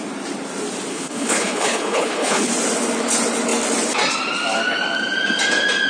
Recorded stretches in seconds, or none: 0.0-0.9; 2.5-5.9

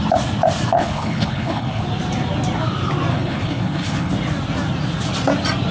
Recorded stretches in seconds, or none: 0.0-0.7; 1.8-3.1; 4.1-5.7